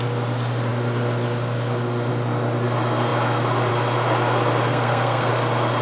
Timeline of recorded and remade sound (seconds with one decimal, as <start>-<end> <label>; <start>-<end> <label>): 0.0-4.7 recorded; 4.7-5.3 remade; 5.3-5.8 recorded

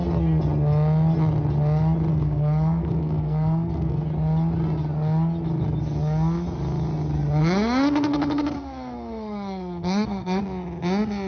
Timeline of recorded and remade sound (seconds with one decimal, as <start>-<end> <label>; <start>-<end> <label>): 0.0-2.1 recorded; 2.1-4.0 remade; 4.0-7.4 recorded; 7.4-10.4 remade; 10.4-11.3 recorded

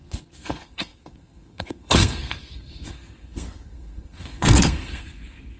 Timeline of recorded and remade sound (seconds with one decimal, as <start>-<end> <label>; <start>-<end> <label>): 0.0-5.6 remade

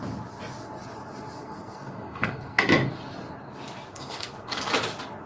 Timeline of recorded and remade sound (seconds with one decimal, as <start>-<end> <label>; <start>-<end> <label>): 0.0-1.4 recorded; 1.4-2.6 remade; 2.6-3.9 recorded; 3.9-4.7 remade; 4.7-5.3 recorded

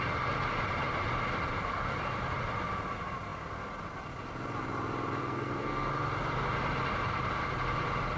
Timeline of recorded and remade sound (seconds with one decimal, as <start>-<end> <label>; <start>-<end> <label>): 0.0-5.2 recorded; 5.2-5.9 remade; 5.9-8.2 recorded

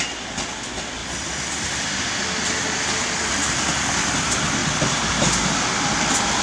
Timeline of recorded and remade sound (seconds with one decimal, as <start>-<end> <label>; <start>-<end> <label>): 0.0-6.4 recorded